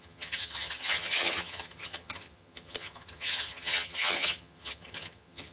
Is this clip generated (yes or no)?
yes